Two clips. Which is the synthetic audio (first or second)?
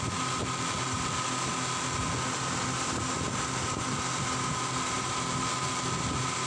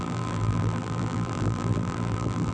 second